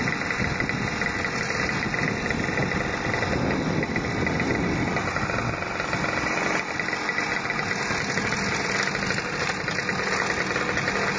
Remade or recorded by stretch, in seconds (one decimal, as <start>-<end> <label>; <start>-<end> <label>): 0.0-11.2 recorded